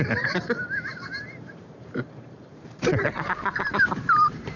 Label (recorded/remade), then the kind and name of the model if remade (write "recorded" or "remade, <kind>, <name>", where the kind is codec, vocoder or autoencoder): remade, vocoder, BigVGAN v2